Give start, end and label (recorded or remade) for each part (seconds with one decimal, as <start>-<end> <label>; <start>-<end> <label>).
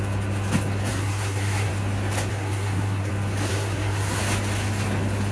0.0-0.9 recorded; 0.9-1.7 remade; 1.7-2.3 recorded; 2.3-3.1 remade; 3.1-3.5 recorded; 3.5-4.2 remade; 4.2-5.3 recorded